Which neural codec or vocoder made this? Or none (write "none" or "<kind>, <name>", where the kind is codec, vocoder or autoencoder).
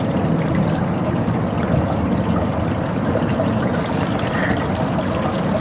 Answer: none